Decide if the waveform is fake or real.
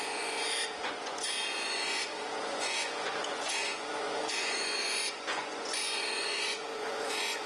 fake